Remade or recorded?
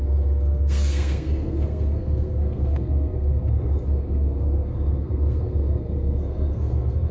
remade